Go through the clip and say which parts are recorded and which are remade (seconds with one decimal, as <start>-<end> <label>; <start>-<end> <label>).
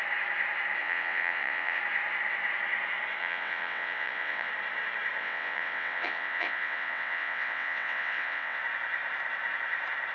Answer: 0.0-0.8 recorded; 0.8-1.8 remade; 1.8-3.2 recorded; 3.2-4.5 remade; 4.5-5.2 recorded; 5.2-8.6 remade; 8.6-10.1 recorded